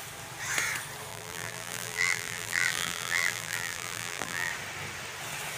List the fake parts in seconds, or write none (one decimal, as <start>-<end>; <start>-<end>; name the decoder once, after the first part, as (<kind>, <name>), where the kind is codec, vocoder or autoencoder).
1.1-4.5 (vocoder, BigVGAN v2)